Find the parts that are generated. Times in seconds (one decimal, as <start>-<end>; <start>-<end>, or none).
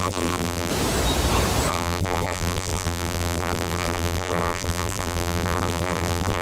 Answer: 0.0-0.7; 1.7-6.4